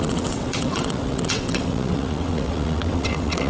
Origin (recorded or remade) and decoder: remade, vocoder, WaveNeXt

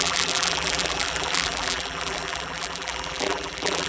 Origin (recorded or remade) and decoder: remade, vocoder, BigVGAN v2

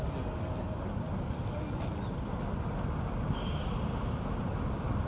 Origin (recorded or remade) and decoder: recorded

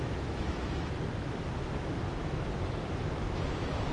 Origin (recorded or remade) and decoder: remade, autoencoder, DAC-VAE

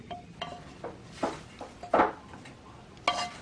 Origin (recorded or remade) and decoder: recorded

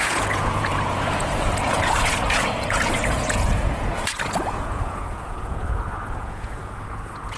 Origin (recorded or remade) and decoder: remade, vocoder, Vocos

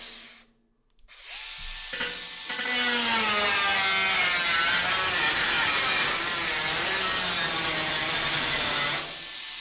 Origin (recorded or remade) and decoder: recorded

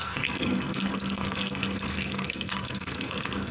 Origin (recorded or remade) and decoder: remade, codec, SNAC